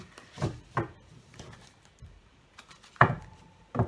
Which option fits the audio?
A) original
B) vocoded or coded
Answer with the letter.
B